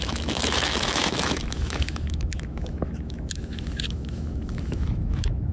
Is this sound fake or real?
fake